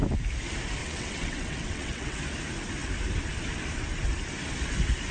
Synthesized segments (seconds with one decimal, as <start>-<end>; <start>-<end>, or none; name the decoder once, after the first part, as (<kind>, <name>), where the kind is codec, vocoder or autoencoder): 0.8-2.2 (vocoder, WaveNeXt)